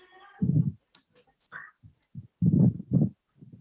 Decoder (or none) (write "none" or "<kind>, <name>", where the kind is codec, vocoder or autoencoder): none